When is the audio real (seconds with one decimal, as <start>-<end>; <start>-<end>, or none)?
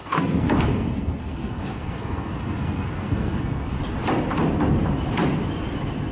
3.8-6.1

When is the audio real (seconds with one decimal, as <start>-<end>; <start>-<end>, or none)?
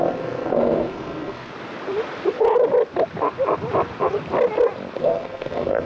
1.5-5.0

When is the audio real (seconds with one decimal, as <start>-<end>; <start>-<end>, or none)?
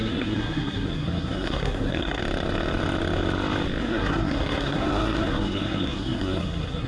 2.2-3.8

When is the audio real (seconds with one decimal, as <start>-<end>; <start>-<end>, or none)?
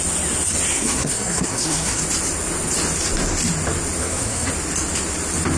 0.0-0.7; 2.0-4.0; 4.5-5.6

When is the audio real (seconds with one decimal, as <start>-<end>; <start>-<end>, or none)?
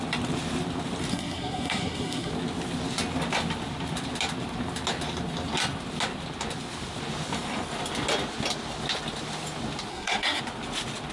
0.0-1.1; 2.3-9.9; 10.4-11.1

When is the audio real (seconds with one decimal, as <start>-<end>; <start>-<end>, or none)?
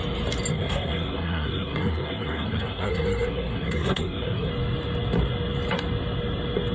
0.0-0.5; 4.5-6.7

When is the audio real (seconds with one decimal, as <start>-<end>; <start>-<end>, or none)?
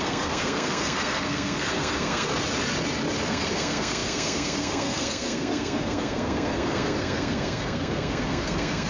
2.3-3.3